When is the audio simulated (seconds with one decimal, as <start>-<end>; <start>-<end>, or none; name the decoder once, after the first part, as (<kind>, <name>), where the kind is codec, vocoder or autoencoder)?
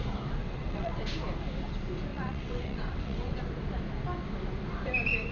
0.4-0.9 (vocoder, WaveNeXt); 2.1-3.4